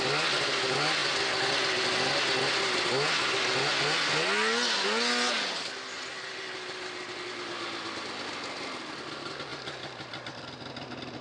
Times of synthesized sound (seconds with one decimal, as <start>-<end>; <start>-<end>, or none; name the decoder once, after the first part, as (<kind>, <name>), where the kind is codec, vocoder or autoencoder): none